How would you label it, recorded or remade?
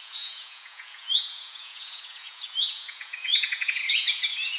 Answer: remade